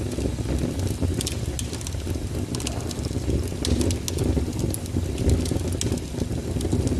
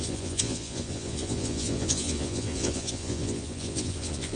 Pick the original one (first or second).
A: first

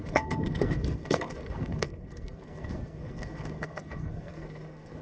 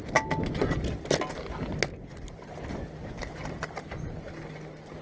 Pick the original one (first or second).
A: second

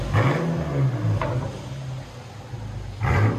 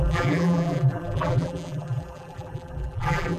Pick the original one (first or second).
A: first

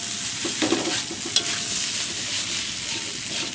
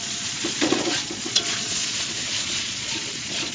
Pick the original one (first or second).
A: first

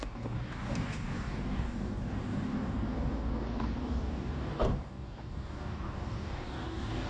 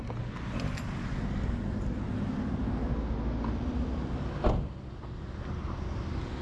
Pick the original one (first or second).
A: second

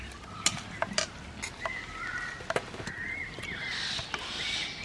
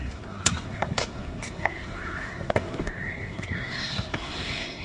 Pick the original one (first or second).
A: first